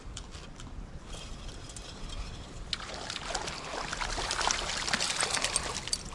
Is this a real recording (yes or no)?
yes